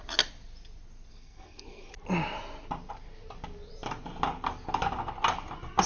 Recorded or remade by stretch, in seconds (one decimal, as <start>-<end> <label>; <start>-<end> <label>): 0.0-1.1 recorded; 1.1-1.9 remade; 1.9-5.9 recorded